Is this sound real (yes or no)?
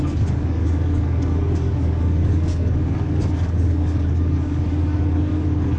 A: no